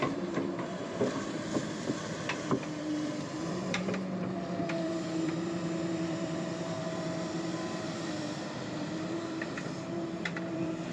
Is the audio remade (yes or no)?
yes